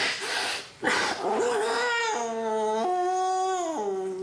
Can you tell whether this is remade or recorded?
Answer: recorded